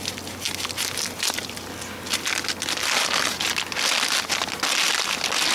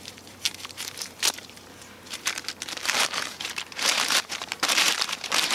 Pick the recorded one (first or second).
first